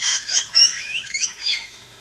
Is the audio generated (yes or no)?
yes